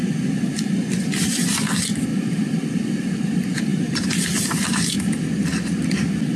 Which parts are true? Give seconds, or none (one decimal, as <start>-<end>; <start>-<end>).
0.0-2.1; 3.1-3.7; 4.9-6.4